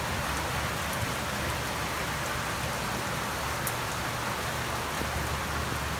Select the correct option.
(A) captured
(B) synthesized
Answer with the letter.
A